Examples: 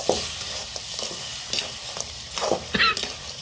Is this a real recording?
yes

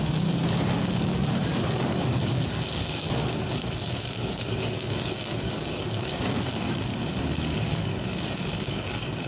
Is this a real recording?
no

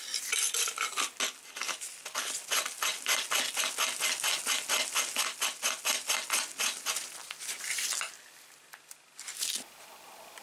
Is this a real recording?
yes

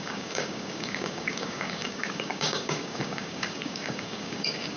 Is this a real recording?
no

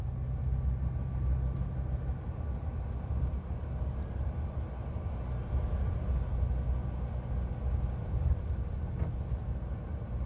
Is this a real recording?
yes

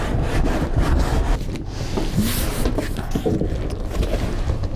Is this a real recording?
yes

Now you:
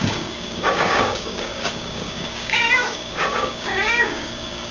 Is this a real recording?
no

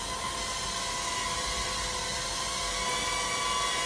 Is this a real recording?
yes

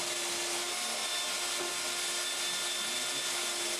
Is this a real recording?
yes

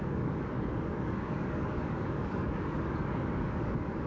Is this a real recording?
no